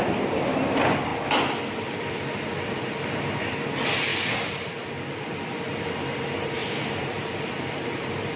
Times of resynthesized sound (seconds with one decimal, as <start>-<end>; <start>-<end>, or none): 6.6-8.0